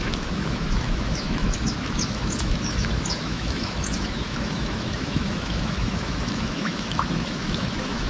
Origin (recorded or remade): remade